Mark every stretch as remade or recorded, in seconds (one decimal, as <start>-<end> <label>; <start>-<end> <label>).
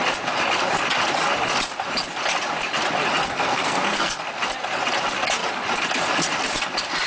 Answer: 0.0-3.2 recorded; 3.2-4.2 remade; 4.2-7.1 recorded